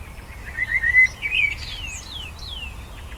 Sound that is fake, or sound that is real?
real